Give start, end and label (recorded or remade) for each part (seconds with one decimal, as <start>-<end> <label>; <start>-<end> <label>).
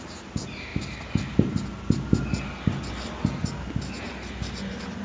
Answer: 0.0-5.0 recorded